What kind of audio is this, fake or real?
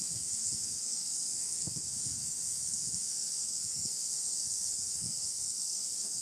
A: fake